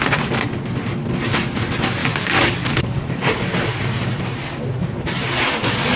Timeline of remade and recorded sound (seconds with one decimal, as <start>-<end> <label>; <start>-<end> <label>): 0.0-2.0 recorded; 2.0-3.3 remade; 3.3-6.0 recorded